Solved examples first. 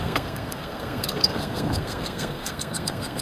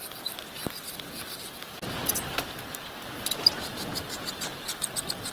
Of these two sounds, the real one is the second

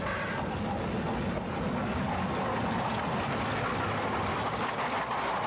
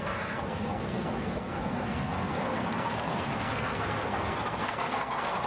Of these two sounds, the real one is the first